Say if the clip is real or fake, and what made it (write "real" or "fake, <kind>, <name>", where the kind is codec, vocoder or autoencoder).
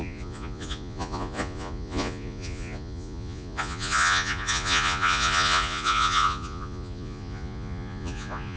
fake, vocoder, Vocos